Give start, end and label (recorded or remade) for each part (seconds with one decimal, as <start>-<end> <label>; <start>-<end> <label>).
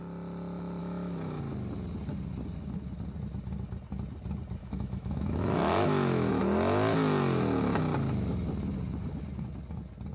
0.0-0.8 recorded; 0.8-1.4 remade; 1.4-4.6 recorded; 4.6-6.4 remade; 6.4-10.1 recorded